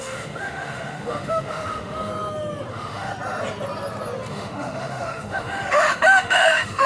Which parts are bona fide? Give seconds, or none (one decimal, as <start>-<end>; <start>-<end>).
2.1-2.7; 3.1-4.3